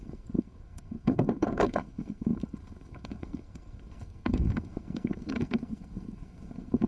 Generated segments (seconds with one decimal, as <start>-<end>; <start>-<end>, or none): 0.0-6.9